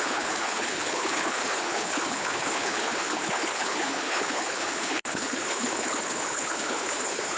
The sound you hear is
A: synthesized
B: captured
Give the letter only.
A